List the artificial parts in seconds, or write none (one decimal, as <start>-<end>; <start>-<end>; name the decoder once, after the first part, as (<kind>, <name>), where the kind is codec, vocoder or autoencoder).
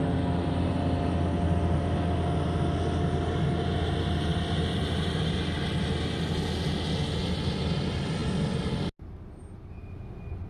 none